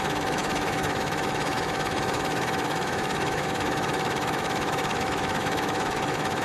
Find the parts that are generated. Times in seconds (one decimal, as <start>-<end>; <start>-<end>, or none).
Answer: 0.0-6.4